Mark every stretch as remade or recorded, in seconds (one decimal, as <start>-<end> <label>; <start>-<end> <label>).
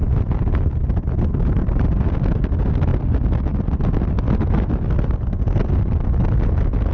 0.0-6.9 recorded